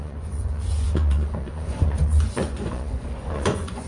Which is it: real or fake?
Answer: fake